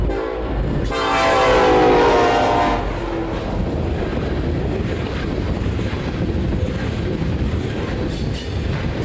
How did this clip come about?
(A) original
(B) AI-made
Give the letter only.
A